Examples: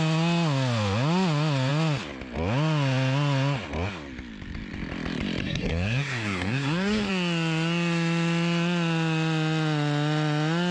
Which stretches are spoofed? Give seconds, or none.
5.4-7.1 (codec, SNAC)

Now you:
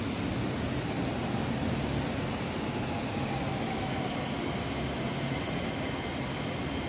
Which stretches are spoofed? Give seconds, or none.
3.5-4.2 (autoencoder, DAC-VAE)

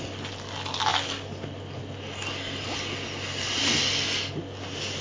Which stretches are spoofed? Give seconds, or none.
none

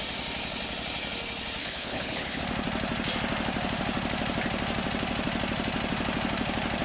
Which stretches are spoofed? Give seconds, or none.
1.6-2.4 (codec, HILCodec)

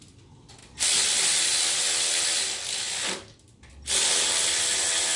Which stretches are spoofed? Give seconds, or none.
none

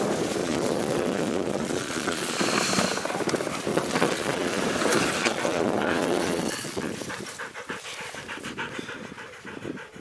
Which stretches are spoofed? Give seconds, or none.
0.4-2.4 (vocoder, Vocos); 3.7-4.6; 5.2-6.9

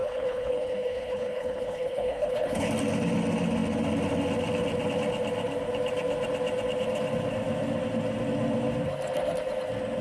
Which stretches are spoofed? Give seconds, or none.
0.0-2.7 (codec, HILCodec)